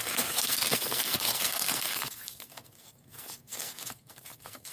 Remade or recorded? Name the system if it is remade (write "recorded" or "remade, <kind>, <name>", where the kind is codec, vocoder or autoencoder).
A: remade, codec, SNAC